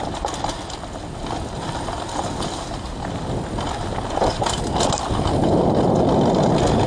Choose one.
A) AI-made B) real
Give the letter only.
B